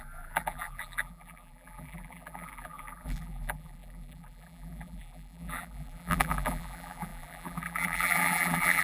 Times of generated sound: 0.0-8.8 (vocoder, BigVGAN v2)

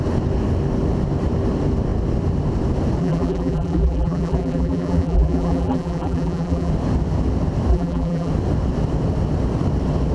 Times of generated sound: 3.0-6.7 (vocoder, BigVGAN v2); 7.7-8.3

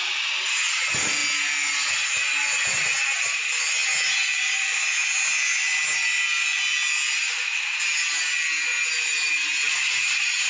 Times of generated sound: none

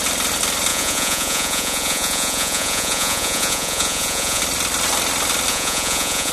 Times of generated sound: 0.7-4.4 (vocoder, Vocos); 5.5-6.3